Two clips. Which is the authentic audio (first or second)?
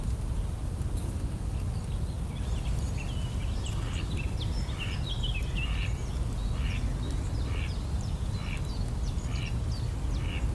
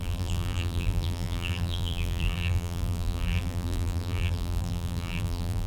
first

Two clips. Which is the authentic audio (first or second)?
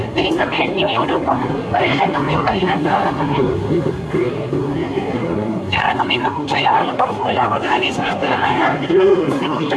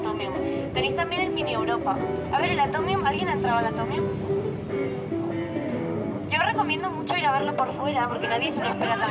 second